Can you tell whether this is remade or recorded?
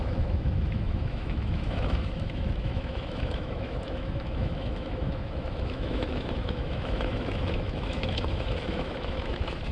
remade